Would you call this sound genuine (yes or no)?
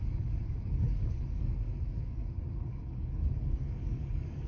no